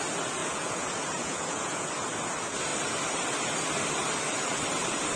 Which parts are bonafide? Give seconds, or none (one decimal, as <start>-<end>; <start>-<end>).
0.0-0.4; 1.9-5.2

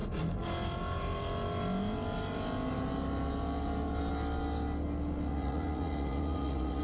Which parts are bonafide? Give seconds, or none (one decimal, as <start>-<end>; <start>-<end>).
0.0-5.3

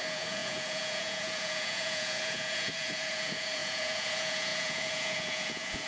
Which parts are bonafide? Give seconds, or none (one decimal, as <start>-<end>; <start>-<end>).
none

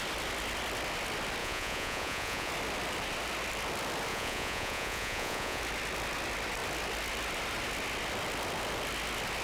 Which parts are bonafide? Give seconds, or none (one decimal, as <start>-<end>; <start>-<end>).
0.0-1.4; 2.5-4.1; 5.6-9.4

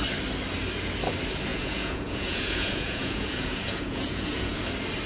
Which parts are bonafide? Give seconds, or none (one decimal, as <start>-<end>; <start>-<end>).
0.0-1.5; 4.6-5.1

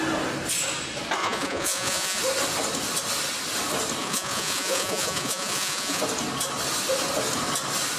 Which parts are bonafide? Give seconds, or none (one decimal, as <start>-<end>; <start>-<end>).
0.0-1.2; 2.2-4.0; 6.0-8.0

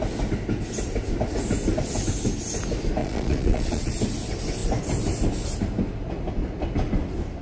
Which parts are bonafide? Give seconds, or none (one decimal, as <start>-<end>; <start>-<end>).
0.0-3.0; 3.9-7.4

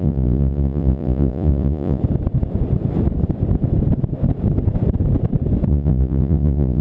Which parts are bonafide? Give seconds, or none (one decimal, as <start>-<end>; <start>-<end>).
2.0-5.7